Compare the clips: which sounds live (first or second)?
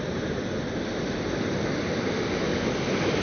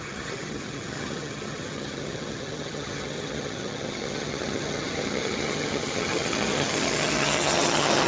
first